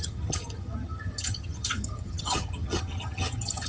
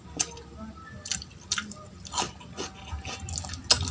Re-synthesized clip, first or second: first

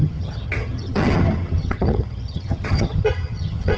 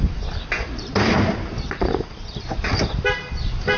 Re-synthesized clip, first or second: first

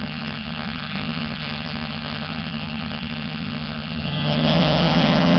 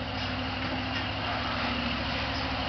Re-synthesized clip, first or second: first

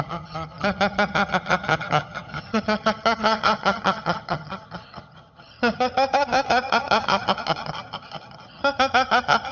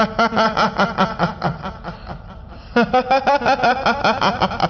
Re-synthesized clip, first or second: first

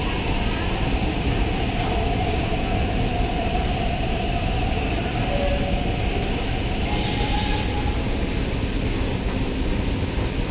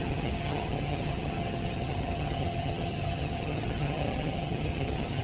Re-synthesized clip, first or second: second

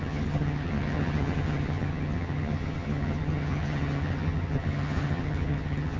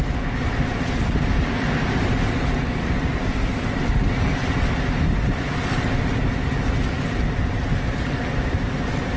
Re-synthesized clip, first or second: first